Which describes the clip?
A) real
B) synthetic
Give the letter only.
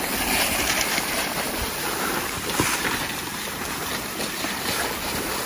B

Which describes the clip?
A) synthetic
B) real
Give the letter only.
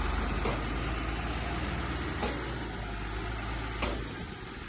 B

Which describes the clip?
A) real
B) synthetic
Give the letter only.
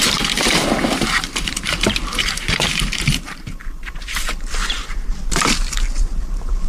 B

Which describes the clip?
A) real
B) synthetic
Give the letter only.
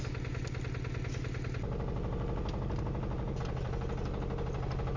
A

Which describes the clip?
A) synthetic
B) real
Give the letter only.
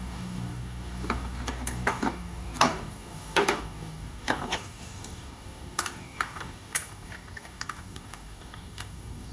A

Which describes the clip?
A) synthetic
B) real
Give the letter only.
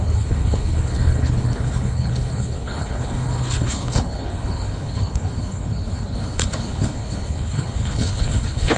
A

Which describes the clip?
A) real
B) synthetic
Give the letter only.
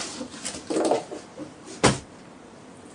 A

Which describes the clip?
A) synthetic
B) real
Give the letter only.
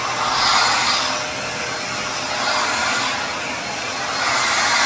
B